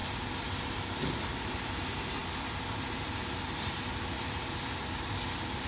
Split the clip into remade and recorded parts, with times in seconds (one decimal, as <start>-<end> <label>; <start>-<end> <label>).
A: 0.0-5.7 recorded